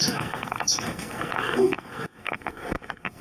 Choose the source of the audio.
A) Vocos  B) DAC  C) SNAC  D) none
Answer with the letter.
C